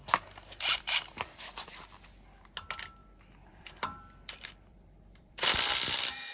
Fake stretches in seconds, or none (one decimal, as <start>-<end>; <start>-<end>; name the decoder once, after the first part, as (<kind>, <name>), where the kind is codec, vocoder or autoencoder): 0.0-1.7 (vocoder, BigVGAN v2); 3.0-5.4

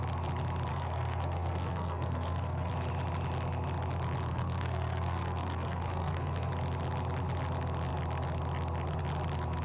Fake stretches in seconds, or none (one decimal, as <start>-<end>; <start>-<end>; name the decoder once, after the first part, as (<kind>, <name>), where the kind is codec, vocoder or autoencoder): 0.7-2.7 (codec, SNAC); 4.3-6.5